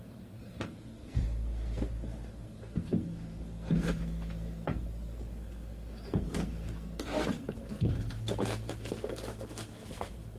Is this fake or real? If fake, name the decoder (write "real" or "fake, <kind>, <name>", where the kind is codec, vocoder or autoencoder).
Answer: fake, codec, SNAC